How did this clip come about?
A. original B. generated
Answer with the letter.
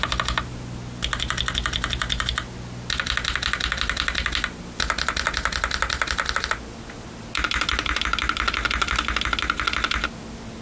A